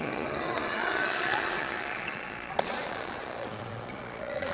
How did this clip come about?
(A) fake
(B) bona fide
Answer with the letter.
A